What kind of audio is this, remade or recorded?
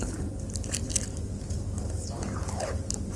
recorded